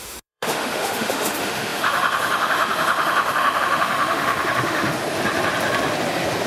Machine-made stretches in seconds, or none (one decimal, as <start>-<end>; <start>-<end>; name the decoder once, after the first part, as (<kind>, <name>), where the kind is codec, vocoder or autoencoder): 0.0-5.0 (autoencoder, DAC-VAE)